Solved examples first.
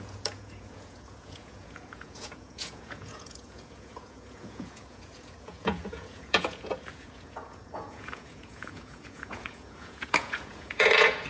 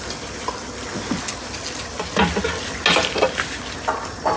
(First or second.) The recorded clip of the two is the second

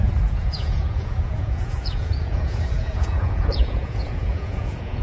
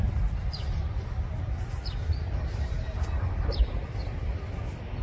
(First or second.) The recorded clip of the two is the second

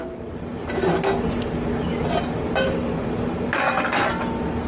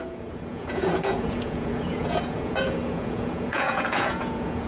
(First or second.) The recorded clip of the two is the first